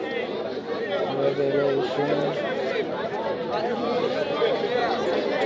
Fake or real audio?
real